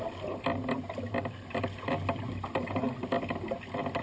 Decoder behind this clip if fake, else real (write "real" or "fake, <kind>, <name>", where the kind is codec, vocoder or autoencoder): real